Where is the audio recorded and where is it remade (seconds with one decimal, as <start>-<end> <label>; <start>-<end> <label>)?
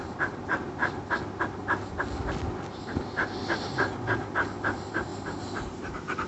0.0-0.8 remade; 0.8-4.6 recorded; 4.6-5.1 remade; 5.1-5.7 recorded; 5.7-6.3 remade